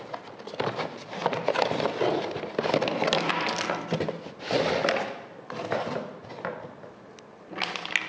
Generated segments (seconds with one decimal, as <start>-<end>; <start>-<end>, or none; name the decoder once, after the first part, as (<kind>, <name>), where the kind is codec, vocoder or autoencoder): none